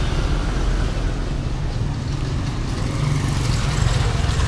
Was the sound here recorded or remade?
recorded